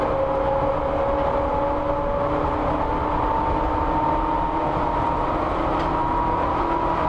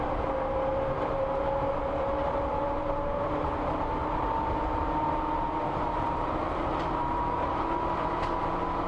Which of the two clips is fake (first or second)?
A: second